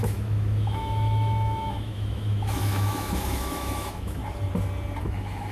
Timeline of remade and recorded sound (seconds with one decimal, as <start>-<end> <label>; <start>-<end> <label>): 0.0-4.2 remade; 4.2-5.0 recorded; 5.0-5.5 remade